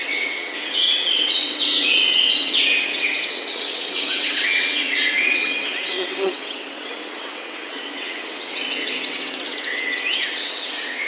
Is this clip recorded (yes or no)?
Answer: no